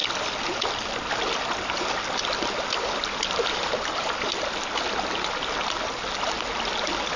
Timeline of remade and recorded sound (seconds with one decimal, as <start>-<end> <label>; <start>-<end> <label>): 0.0-7.2 recorded